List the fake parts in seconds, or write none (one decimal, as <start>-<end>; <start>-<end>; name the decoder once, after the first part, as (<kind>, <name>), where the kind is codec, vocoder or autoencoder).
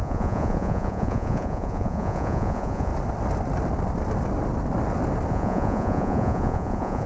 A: 0.0-2.9 (vocoder, Vocos); 5.3-7.1